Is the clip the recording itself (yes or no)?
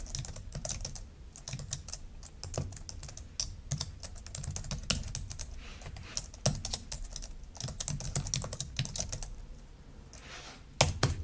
yes